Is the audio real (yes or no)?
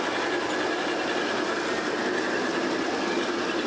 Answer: yes